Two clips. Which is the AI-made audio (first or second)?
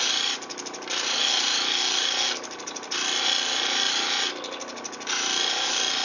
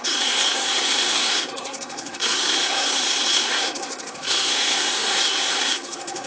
second